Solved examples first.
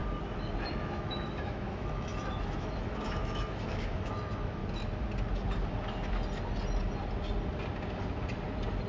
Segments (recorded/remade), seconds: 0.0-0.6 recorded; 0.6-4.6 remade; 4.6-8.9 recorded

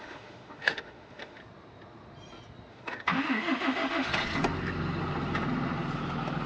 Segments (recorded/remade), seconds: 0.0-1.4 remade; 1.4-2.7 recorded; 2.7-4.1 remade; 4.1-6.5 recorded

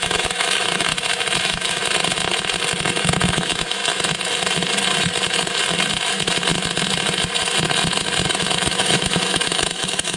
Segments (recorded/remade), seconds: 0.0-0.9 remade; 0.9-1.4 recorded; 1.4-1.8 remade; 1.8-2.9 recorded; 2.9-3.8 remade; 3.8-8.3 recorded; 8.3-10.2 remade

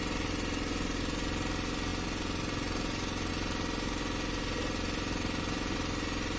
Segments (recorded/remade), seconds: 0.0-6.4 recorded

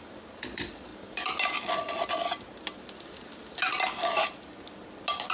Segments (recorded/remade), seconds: 0.0-5.3 recorded

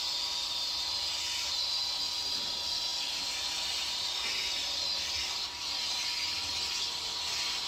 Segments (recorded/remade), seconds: 0.0-7.7 recorded